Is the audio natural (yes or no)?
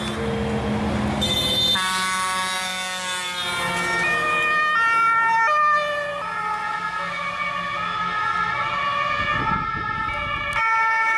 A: yes